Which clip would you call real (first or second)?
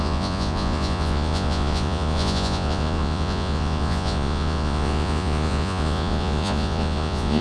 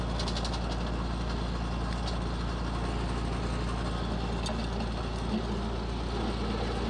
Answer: second